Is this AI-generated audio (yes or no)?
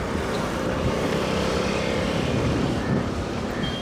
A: yes